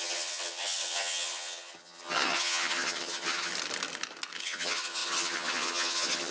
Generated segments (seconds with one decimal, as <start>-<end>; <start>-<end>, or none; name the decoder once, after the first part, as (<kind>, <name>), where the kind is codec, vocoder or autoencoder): 0.0-3.5 (vocoder, HiFi-GAN); 4.4-6.3